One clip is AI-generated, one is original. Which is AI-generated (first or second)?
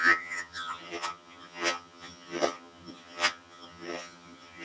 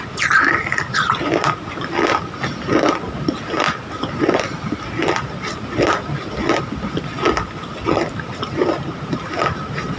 first